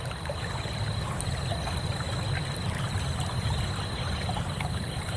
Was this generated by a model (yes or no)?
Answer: no